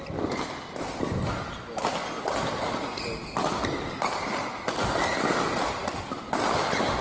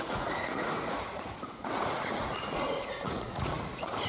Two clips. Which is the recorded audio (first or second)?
first